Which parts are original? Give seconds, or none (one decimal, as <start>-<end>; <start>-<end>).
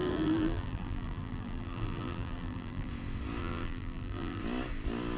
2.9-3.4; 4.4-5.2